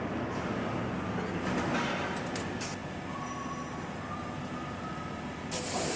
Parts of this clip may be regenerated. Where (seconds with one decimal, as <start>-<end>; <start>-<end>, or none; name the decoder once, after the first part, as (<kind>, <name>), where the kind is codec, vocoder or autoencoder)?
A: none

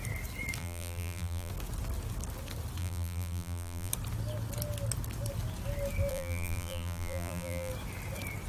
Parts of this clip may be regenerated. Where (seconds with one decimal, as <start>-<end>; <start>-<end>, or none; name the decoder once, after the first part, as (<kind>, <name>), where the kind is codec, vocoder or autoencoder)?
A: 0.6-1.5 (vocoder, BigVGAN v2); 2.8-3.9; 6.1-7.7

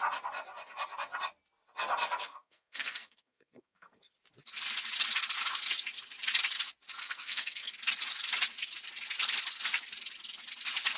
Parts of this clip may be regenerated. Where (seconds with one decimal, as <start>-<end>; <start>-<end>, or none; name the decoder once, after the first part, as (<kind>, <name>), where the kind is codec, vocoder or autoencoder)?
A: 2.2-4.1 (codec, SNAC); 7.0-7.7

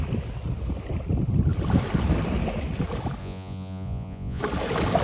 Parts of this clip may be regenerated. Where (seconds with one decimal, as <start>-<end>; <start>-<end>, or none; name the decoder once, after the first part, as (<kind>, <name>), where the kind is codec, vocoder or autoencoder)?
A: 3.2-4.4 (vocoder, Vocos)